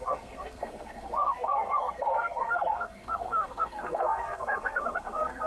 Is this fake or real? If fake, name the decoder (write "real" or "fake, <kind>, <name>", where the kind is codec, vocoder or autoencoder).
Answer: fake, codec, SNAC